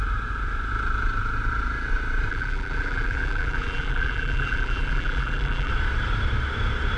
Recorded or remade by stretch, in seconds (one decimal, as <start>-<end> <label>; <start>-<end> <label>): 0.0-2.3 recorded; 2.3-5.7 remade; 5.7-7.0 recorded